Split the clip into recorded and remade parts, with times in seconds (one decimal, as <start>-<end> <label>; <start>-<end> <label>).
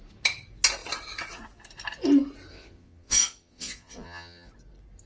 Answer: 0.0-2.5 recorded; 2.5-4.5 remade; 4.5-5.1 recorded